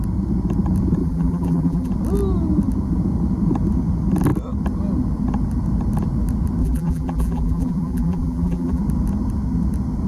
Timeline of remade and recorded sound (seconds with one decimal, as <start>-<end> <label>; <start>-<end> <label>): 0.0-1.0 recorded; 1.0-1.9 remade; 1.9-6.6 recorded; 6.6-8.8 remade; 8.8-10.1 recorded